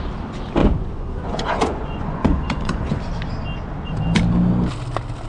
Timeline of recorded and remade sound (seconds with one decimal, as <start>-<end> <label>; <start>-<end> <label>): 0.0-0.6 recorded; 0.6-3.0 remade; 3.0-5.3 recorded